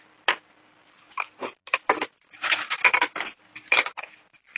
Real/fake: real